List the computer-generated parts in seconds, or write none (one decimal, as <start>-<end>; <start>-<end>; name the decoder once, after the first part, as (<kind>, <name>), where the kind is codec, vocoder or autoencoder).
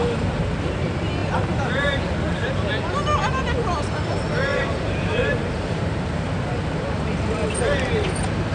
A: 1.2-2.0 (vocoder, BigVGAN v2); 4.5-6.3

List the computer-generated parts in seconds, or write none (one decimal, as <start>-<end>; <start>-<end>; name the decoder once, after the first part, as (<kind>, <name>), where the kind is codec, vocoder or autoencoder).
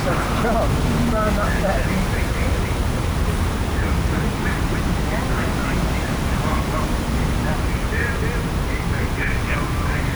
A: 0.0-10.2 (vocoder, BigVGAN v2)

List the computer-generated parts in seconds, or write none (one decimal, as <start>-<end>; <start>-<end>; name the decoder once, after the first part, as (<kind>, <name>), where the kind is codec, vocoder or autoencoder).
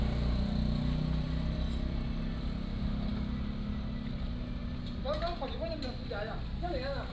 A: 4.6-5.4 (vocoder, BigVGAN v2)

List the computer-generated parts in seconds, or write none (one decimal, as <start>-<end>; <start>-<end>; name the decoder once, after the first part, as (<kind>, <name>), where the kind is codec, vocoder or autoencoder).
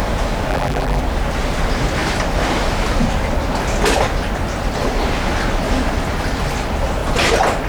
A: 0.5-1.0 (vocoder, BigVGAN v2)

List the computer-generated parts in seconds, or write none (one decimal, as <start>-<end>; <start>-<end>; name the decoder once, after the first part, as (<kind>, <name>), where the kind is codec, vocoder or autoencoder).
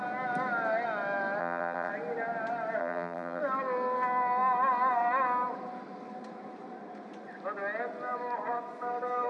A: 1.4-1.9 (vocoder, BigVGAN v2); 2.8-3.4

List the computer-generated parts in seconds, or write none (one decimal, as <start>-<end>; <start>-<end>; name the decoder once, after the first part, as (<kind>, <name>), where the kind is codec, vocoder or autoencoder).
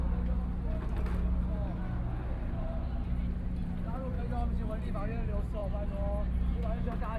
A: 3.6-4.2 (vocoder, BigVGAN v2)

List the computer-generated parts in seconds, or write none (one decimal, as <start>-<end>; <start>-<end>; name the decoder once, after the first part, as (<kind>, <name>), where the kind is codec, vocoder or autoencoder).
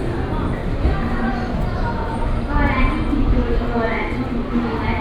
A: 0.6-3.6 (vocoder, BigVGAN v2)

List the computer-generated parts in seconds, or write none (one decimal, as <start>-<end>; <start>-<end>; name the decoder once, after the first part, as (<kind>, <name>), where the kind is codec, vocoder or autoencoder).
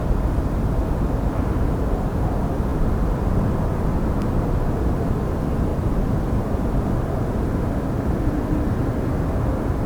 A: none